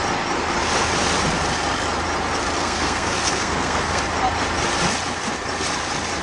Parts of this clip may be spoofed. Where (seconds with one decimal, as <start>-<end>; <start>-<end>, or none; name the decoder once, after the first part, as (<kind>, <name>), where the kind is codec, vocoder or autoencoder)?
2.6-4.0 (codec, SNAC)

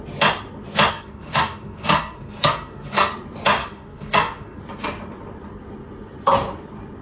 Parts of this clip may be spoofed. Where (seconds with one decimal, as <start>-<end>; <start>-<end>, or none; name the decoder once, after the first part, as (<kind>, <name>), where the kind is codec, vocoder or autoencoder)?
0.9-3.1 (codec, SNAC); 3.6-4.6

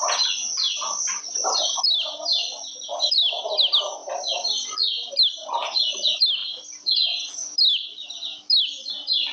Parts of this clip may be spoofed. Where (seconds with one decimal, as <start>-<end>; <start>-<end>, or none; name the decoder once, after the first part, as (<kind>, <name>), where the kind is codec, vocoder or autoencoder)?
4.0-5.1 (vocoder, BigVGAN v2)

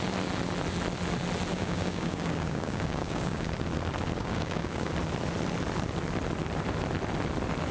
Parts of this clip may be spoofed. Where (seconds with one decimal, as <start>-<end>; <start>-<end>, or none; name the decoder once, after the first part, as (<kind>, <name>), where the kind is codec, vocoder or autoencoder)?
1.5-3.5 (codec, DAC); 4.2-4.9